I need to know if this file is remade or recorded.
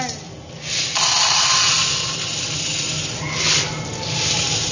recorded